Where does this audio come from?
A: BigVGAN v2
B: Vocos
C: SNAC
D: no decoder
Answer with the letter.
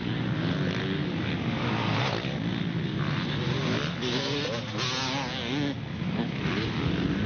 D